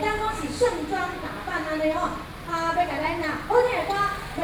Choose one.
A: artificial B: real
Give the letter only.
B